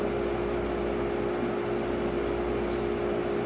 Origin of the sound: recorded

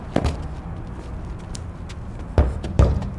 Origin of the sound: recorded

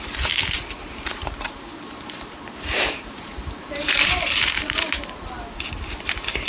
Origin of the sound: remade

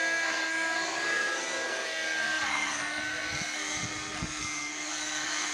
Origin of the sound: remade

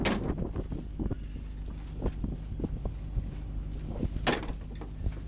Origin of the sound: recorded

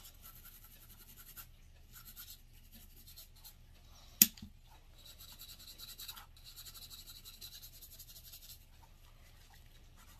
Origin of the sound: recorded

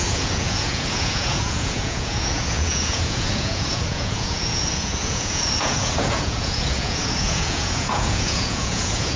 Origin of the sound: remade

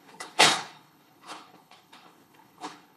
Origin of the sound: remade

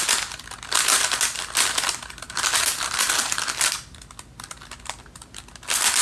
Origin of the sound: recorded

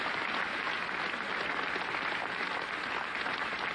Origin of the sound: recorded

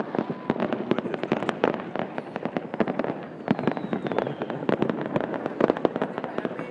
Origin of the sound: recorded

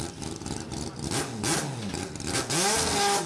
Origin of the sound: recorded